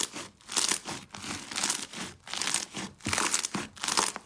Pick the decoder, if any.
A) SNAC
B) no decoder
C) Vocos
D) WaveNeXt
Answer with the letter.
B